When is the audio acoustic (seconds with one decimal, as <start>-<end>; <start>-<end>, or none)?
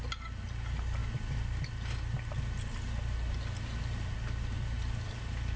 0.0-5.6